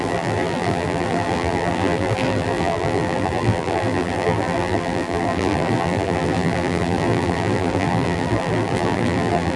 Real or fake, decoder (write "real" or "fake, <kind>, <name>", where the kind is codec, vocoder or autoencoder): fake, vocoder, BigVGAN v2